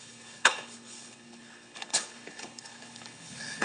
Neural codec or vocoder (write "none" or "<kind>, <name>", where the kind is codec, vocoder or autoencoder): codec, HILCodec